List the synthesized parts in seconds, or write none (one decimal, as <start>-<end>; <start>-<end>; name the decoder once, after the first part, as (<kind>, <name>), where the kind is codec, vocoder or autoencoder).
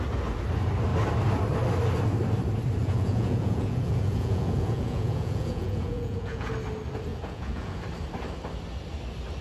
2.8-6.5 (vocoder, Vocos); 7.1-7.8